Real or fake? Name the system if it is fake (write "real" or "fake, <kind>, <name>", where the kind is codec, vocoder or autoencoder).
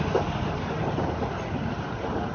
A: real